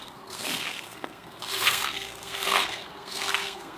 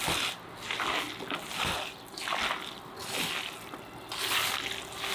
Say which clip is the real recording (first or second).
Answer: second